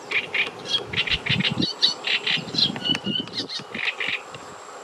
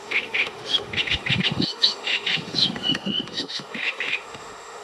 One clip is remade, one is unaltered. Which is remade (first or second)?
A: second